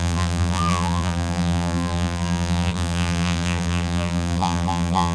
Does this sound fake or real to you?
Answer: fake